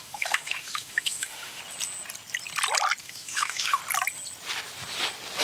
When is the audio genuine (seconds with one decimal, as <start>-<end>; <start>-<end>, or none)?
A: 1.6-3.0; 3.8-5.4